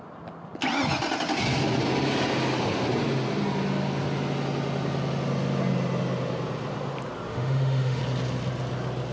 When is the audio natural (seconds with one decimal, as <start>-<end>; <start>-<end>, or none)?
0.0-7.3; 8.0-9.1

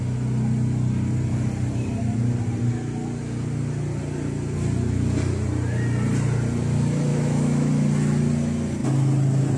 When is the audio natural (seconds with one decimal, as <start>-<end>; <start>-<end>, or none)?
0.0-7.1; 7.7-9.6

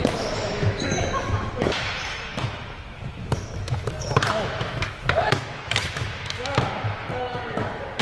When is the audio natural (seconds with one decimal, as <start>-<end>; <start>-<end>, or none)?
none

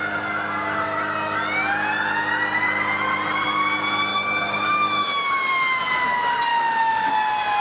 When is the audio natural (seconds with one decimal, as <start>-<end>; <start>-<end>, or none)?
0.0-4.1; 5.8-6.5; 7.1-7.6